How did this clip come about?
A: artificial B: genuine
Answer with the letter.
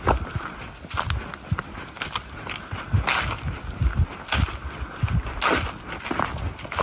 B